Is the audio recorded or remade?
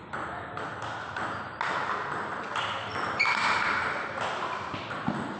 recorded